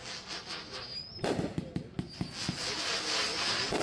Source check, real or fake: real